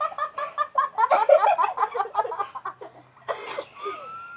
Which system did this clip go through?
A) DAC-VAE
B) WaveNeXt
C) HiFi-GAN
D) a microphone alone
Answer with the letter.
D